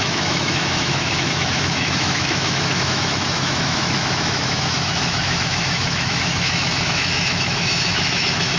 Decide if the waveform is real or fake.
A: fake